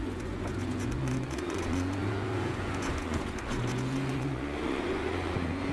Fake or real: fake